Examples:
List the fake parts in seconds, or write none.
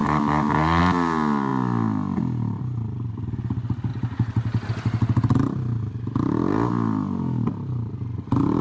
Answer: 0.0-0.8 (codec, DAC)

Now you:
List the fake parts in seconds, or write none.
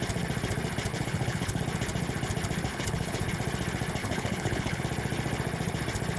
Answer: 0.9-1.6 (codec, HILCodec); 2.7-3.3; 4.0-4.8